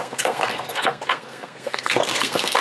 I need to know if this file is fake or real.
fake